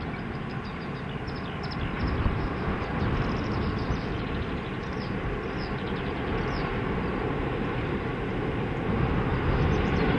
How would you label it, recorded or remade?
recorded